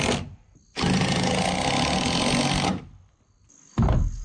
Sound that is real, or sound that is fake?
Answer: real